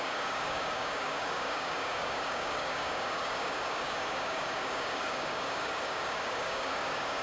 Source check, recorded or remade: remade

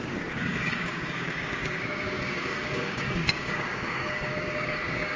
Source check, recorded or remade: remade